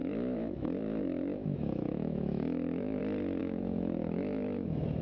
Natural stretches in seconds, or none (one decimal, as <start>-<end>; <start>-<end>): 3.0-3.4